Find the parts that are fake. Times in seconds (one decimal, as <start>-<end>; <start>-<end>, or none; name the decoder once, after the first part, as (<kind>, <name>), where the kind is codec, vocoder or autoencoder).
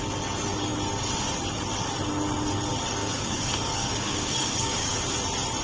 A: 3.0-5.0 (codec, DAC)